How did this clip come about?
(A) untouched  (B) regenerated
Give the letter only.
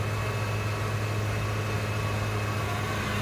A